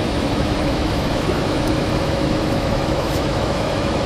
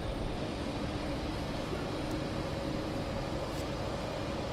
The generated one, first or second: first